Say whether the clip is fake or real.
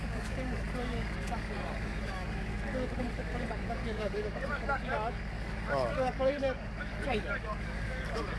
fake